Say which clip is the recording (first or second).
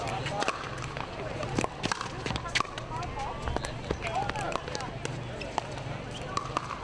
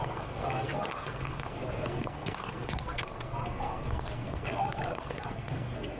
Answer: first